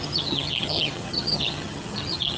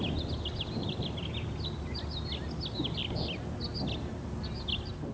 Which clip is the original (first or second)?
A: second